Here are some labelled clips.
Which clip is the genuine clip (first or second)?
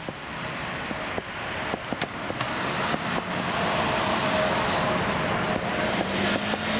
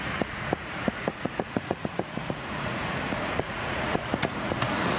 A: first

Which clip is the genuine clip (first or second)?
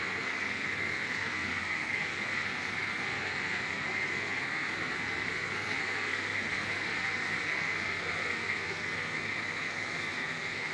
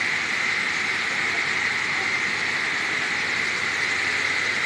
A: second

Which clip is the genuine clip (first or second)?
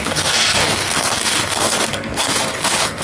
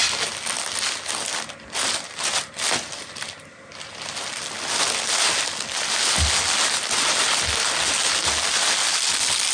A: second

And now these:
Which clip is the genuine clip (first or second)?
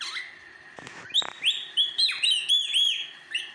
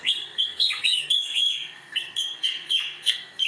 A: first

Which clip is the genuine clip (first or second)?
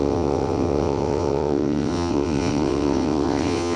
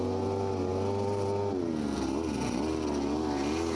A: second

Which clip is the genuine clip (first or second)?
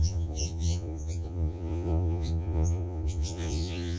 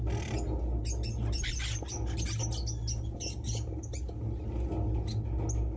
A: second